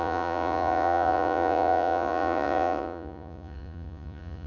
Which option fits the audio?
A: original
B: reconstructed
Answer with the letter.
B